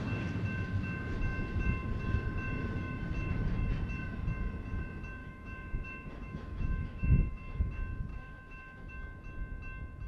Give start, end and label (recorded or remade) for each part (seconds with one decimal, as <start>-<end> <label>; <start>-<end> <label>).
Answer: 0.0-5.2 recorded; 5.2-7.7 remade; 7.7-8.1 recorded; 8.1-8.9 remade; 8.9-10.1 recorded